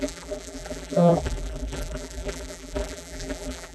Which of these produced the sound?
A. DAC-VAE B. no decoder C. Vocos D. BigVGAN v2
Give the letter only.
D